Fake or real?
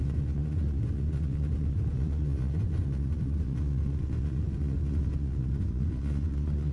fake